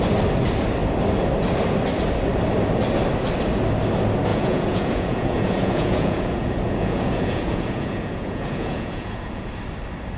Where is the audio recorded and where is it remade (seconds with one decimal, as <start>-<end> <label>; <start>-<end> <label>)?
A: 0.0-4.3 recorded; 4.3-9.5 remade; 9.5-10.2 recorded